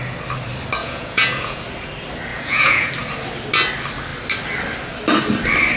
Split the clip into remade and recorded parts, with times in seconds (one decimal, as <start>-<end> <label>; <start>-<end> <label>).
0.0-0.8 recorded; 0.8-1.6 remade; 1.6-2.3 recorded; 2.3-2.9 remade; 2.9-5.8 recorded